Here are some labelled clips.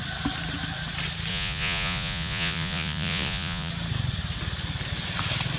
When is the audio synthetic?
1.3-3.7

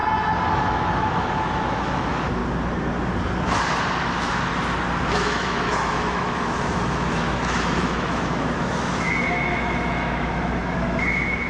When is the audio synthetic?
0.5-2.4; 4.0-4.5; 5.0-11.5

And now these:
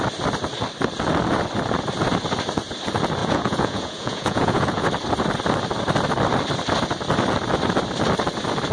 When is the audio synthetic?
3.2-4.9

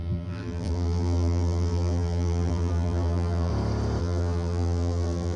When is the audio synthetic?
0.0-3.5; 4.0-5.4